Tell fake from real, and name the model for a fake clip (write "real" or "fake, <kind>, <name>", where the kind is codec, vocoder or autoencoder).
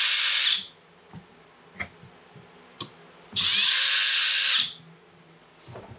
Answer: real